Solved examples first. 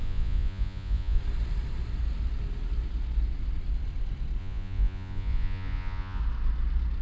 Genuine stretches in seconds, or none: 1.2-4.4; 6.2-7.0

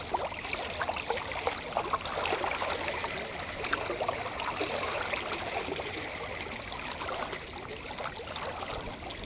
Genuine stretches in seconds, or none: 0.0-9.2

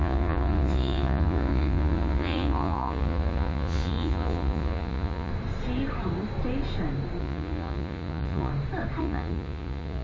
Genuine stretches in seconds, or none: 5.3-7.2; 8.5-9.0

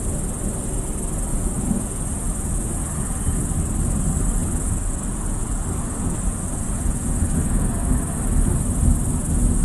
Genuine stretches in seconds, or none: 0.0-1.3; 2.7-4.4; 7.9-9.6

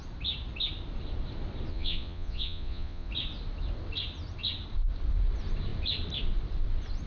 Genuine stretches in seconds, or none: 0.0-1.7; 3.1-7.1

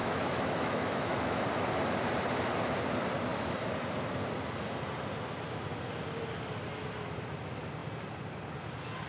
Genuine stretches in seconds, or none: 1.4-9.1

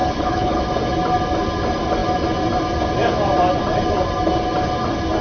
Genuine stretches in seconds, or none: 0.6-5.2